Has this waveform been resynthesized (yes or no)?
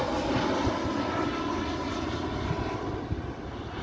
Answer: no